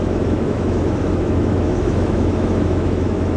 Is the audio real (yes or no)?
no